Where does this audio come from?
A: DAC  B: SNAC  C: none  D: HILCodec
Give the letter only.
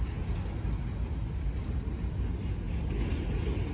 C